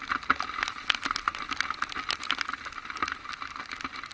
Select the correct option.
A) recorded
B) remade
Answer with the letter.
A